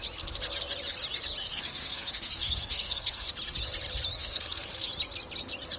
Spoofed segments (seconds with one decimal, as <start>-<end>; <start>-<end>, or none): 1.4-3.3; 4.2-4.9